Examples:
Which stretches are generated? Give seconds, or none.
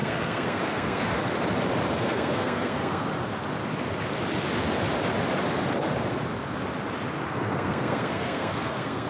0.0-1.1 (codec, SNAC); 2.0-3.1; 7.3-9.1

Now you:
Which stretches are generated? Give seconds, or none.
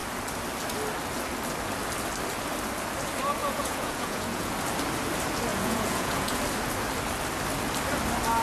3.4-4.5 (vocoder, Vocos); 5.5-6.4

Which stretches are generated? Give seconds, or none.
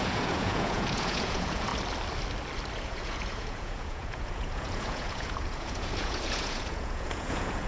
0.0-1.7 (vocoder, Vocos); 2.8-7.7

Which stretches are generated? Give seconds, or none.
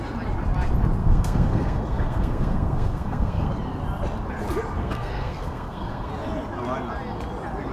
1.0-3.5 (codec, SNAC); 4.8-6.1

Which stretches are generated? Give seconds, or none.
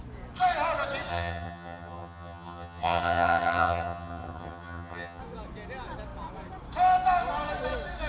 1.1-5.2 (vocoder, HiFi-GAN)